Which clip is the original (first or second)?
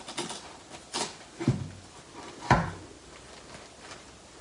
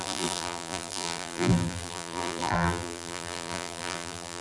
first